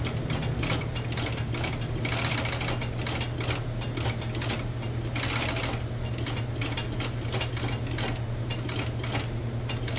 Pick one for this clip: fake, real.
real